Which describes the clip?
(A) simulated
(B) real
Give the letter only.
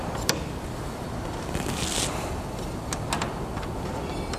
B